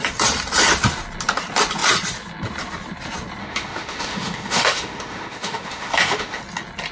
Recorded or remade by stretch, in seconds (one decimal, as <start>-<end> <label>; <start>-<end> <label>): 0.0-3.4 recorded; 3.4-6.4 remade; 6.4-6.9 recorded